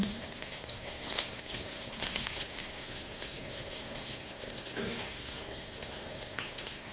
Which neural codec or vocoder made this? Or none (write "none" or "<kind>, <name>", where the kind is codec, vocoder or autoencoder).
codec, SNAC